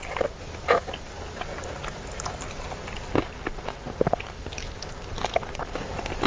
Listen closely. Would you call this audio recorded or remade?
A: recorded